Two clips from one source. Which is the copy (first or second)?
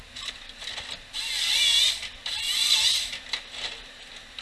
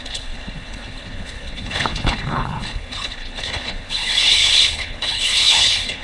second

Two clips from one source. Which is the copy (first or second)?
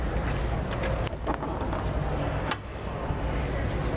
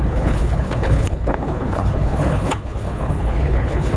second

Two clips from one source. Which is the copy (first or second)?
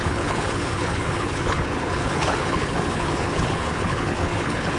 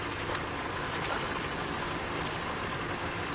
first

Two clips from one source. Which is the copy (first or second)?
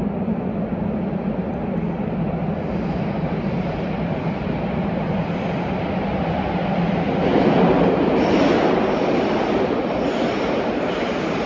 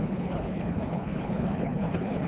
second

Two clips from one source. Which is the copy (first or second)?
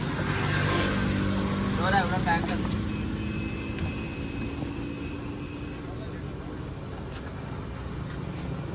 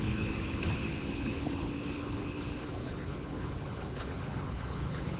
second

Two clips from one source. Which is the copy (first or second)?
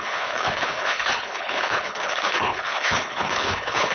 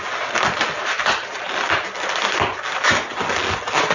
first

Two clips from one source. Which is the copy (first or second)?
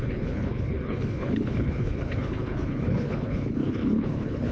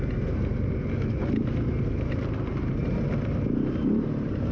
first